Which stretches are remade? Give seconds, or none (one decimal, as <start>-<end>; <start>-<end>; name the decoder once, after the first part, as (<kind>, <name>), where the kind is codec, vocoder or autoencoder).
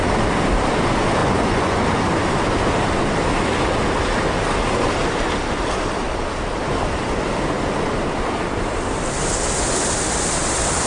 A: 1.2-1.8 (vocoder, Vocos)